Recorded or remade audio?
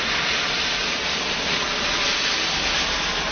recorded